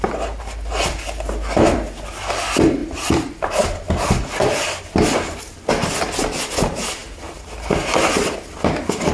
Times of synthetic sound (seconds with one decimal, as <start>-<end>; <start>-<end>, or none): none